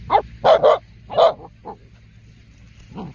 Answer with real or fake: real